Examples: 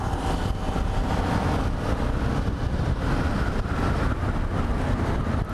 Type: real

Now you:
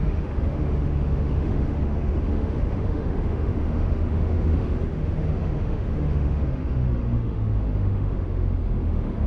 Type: fake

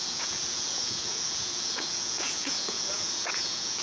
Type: fake